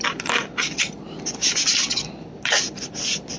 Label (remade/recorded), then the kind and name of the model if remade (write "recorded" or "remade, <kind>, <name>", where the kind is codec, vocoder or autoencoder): recorded